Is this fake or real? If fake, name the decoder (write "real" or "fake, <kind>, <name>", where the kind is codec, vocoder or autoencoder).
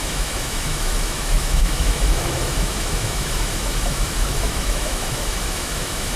fake, autoencoder, DAC-VAE